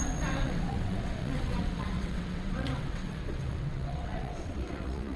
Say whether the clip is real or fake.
fake